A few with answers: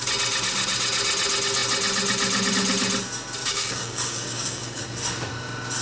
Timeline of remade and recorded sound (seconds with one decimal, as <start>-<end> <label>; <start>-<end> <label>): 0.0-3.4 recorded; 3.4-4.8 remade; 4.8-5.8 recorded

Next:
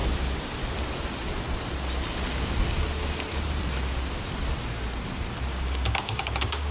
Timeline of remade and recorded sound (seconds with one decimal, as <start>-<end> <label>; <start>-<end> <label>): 0.0-5.5 recorded; 5.5-6.7 remade

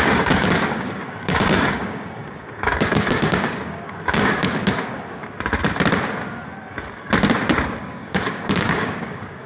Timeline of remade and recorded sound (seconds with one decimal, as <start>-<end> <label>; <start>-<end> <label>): 0.0-5.2 remade; 5.2-7.8 recorded; 7.8-9.5 remade

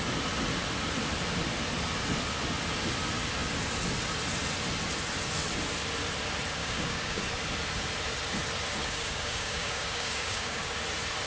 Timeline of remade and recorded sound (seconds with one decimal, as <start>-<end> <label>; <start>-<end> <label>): 0.0-6.6 recorded; 6.6-7.2 remade; 7.2-8.8 recorded; 8.8-10.7 remade; 10.7-11.3 recorded

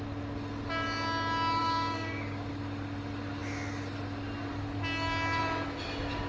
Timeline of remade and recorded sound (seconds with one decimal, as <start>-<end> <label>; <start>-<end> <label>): 0.0-1.6 recorded; 1.6-2.5 remade; 2.5-6.3 recorded

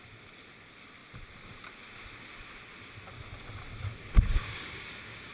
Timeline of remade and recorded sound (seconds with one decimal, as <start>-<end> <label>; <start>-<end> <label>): 0.0-4.3 recorded; 4.3-5.3 remade